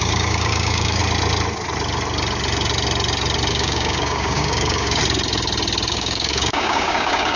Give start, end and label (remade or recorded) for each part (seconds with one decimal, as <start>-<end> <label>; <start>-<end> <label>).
0.0-1.0 remade; 1.0-3.5 recorded; 3.5-5.0 remade; 5.0-5.9 recorded; 5.9-7.4 remade